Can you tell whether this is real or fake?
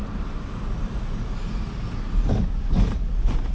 real